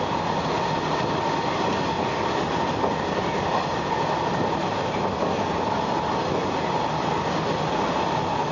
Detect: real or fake real